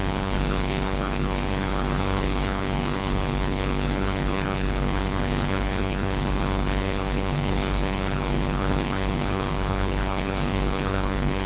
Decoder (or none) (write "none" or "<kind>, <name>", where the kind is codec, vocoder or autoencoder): codec, HILCodec